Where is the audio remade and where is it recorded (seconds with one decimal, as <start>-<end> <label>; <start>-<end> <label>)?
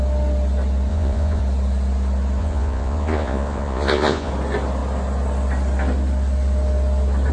0.0-0.9 recorded; 0.9-1.4 remade; 1.4-2.4 recorded; 2.4-4.3 remade; 4.3-7.3 recorded